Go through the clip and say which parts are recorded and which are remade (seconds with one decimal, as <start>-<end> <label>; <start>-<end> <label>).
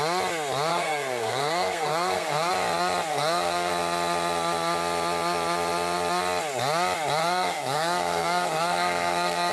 0.0-0.7 recorded; 0.7-2.5 remade; 2.5-3.1 recorded; 3.1-3.7 remade; 3.7-7.2 recorded; 7.2-9.5 remade